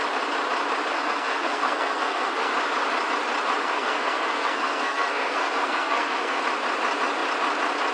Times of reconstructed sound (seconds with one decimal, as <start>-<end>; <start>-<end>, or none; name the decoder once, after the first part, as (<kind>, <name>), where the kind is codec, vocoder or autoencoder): 0.9-2.5 (codec, SNAC); 3.6-6.4